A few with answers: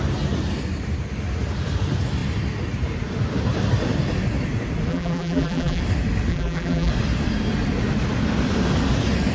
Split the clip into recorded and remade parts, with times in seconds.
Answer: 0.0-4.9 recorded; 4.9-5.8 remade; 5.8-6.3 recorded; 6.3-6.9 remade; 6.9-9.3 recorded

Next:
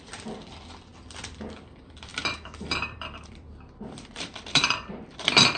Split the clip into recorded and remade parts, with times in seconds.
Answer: 0.0-0.9 remade; 0.9-1.7 recorded; 1.7-5.6 remade